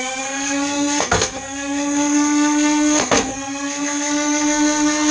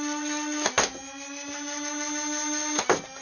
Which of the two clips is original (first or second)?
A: second